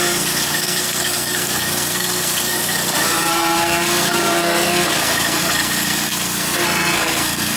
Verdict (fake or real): fake